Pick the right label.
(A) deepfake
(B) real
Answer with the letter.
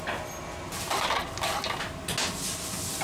B